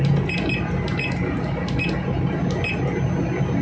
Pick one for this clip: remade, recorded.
recorded